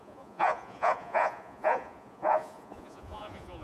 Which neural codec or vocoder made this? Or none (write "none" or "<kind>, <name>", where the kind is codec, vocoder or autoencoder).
vocoder, Vocos